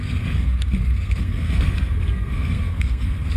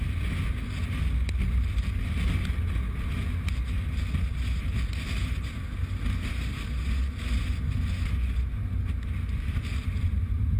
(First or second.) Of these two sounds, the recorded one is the second